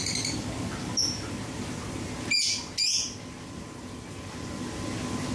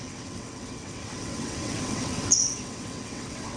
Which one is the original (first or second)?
first